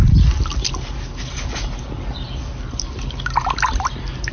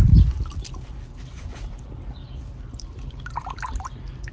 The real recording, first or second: first